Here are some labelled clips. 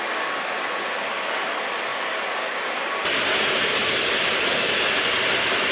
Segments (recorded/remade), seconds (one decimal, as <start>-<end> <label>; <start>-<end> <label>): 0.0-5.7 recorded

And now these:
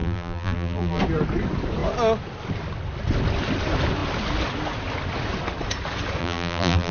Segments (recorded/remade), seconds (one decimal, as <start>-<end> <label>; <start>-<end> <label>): 0.0-1.0 remade; 1.0-6.2 recorded; 6.2-6.9 remade

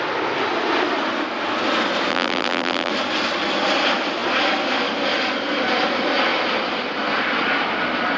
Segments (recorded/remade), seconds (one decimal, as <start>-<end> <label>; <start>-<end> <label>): 0.0-2.1 recorded; 2.1-2.9 remade; 2.9-8.2 recorded